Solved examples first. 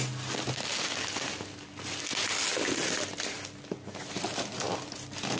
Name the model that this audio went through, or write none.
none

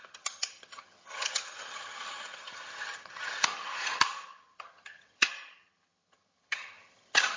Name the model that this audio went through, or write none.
vocoder, HiFi-GAN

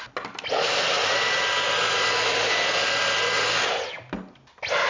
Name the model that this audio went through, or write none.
none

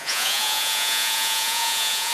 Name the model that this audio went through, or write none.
vocoder, Vocos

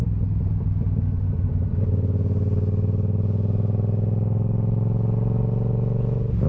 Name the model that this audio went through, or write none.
none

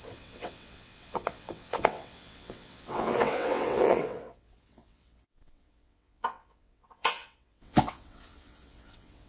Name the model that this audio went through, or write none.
vocoder, WaveNeXt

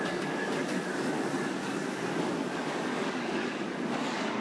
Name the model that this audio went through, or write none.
codec, DAC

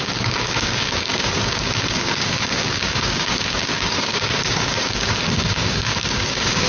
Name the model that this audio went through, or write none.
codec, DAC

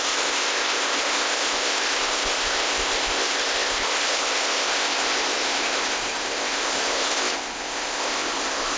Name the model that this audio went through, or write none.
codec, ZipCodec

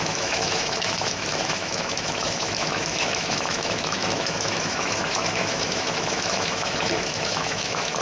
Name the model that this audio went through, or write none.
autoencoder, DAC-VAE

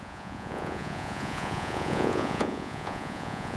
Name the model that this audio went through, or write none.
vocoder, Vocos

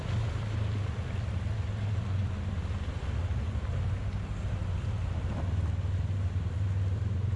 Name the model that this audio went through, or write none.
none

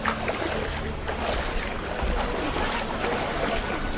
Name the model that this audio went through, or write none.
none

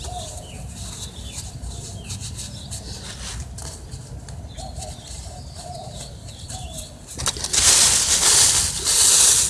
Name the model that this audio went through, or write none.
none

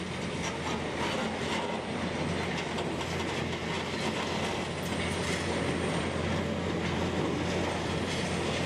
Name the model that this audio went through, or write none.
none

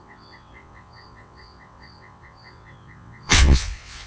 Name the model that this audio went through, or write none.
vocoder, WaveNeXt